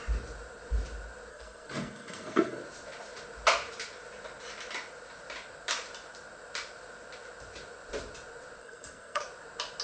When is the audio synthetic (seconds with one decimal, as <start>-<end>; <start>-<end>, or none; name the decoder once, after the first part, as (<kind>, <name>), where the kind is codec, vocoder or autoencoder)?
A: 1.3-2.6 (codec, SNAC); 8.6-9.2

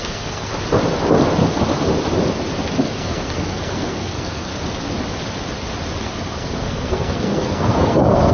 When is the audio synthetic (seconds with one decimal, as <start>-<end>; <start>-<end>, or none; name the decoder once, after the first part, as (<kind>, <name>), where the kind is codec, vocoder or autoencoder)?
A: 0.0-0.5 (codec, SNAC); 2.8-4.5; 6.0-8.3

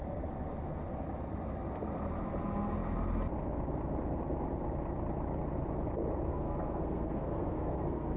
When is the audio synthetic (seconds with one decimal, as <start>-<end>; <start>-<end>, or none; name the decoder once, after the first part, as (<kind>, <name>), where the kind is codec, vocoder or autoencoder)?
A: 6.3-8.2 (codec, SNAC)

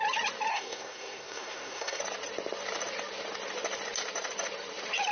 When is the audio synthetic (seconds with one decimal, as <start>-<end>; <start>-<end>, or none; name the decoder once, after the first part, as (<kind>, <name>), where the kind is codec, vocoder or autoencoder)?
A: 0.5-2.0 (codec, SNAC)

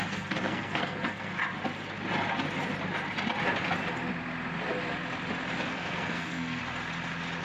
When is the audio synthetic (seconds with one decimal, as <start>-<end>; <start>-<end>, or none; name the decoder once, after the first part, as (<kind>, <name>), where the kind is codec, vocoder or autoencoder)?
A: 0.0-1.3 (codec, SNAC); 5.7-6.6